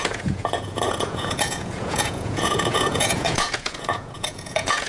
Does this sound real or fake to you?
fake